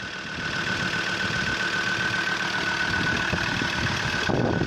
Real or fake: real